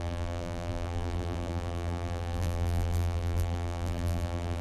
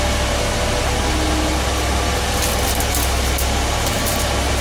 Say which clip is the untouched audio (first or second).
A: second